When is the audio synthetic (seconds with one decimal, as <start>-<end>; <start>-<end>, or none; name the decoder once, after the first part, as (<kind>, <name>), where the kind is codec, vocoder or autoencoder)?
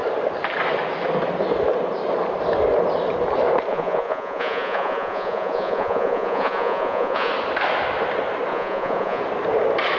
3.7-7.3 (vocoder, Vocos); 8.5-9.2